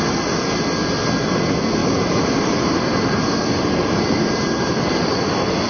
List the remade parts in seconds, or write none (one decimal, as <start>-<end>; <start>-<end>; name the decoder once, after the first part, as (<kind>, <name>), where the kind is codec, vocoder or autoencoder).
1.8-5.2 (vocoder, BigVGAN v2)